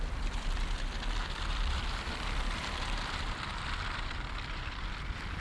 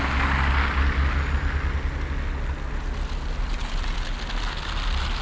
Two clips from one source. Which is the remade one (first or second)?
first